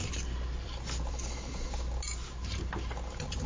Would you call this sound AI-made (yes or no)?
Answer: no